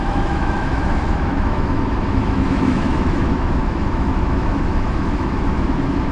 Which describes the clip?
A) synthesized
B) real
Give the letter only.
A